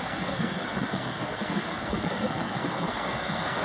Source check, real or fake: fake